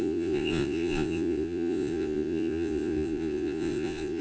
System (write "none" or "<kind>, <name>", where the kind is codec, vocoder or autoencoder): vocoder, Vocos